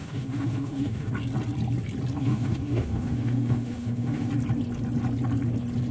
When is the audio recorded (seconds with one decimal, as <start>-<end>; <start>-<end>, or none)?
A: 1.1-2.2; 4.3-5.9